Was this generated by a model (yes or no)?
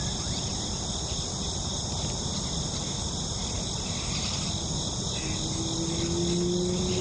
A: no